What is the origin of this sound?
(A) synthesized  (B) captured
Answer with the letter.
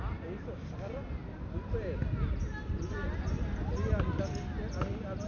B